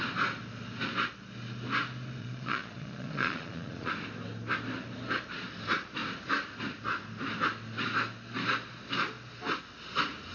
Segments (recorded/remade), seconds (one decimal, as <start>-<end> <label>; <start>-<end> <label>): 0.0-2.2 recorded; 2.2-3.9 remade; 3.9-10.3 recorded